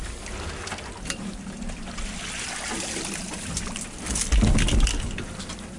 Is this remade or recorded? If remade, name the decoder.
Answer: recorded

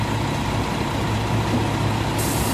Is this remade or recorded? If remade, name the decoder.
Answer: recorded